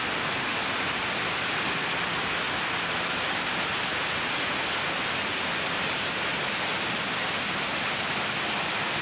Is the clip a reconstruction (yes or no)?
no